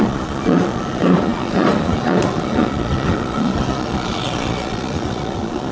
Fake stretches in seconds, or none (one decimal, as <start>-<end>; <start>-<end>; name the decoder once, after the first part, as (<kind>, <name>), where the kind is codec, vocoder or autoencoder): 0.0-5.7 (vocoder, Vocos)